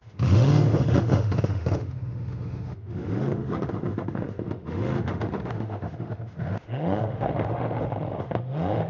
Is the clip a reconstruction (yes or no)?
yes